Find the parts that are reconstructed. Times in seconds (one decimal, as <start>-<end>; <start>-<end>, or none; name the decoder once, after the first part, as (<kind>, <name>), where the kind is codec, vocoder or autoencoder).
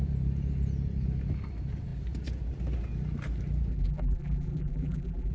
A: 3.7-5.3 (vocoder, BigVGAN v2)